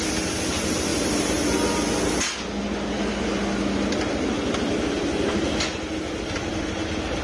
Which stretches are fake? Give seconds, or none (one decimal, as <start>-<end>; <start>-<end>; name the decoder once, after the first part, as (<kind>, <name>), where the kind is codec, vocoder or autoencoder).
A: none